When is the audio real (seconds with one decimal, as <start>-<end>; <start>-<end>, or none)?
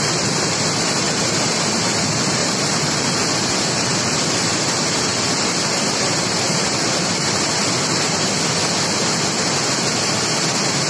0.0-2.4; 4.1-4.5; 7.6-10.9